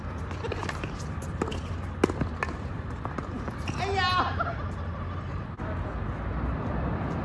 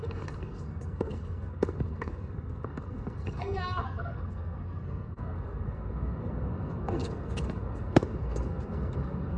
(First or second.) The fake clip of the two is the second